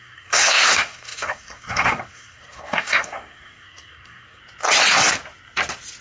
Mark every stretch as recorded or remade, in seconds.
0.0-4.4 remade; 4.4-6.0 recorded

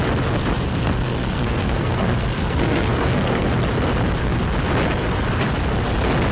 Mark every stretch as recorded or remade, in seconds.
0.0-0.7 recorded; 0.7-3.5 remade; 3.5-6.3 recorded